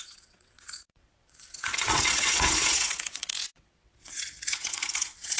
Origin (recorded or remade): remade